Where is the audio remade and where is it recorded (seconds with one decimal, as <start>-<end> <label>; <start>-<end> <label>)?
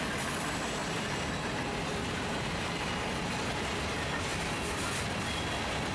0.0-0.8 recorded; 0.8-1.5 remade; 1.5-1.9 recorded; 1.9-3.8 remade; 3.8-5.9 recorded